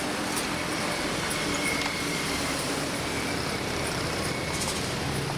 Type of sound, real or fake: fake